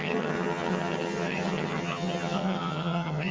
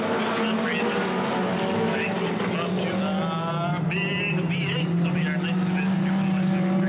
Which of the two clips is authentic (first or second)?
second